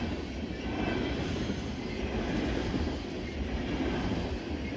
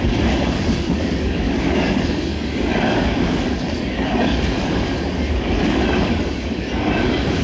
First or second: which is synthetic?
second